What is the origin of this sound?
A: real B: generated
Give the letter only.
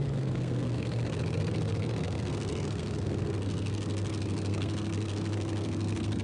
B